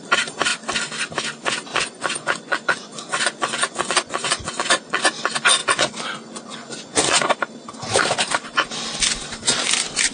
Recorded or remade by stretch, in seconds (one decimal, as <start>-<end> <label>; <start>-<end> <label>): 0.0-1.7 recorded; 1.7-5.0 remade; 5.0-5.6 recorded; 5.6-7.2 remade; 7.2-10.1 recorded